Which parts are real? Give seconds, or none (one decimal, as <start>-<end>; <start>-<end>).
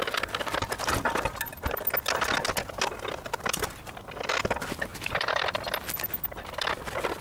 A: 0.0-4.9; 5.4-7.2